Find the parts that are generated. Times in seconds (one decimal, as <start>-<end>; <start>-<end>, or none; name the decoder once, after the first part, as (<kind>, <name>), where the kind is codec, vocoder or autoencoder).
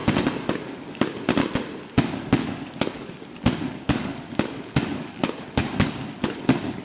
0.6-1.3 (codec, DAC); 1.9-6.8